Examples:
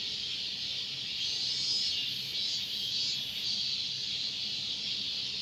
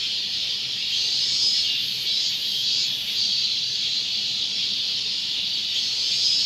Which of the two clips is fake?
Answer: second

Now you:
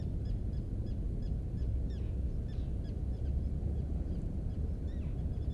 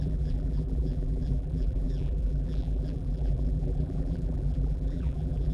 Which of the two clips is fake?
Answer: second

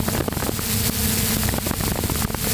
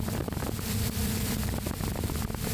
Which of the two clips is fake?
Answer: second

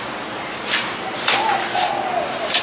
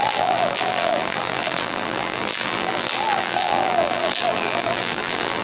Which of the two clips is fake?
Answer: second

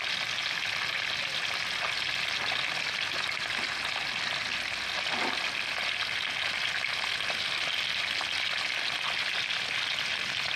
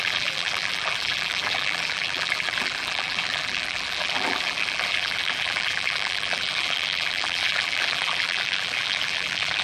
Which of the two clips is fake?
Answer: second